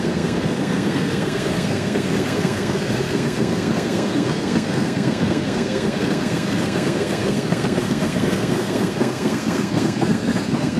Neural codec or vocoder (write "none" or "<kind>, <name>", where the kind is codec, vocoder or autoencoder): codec, SNAC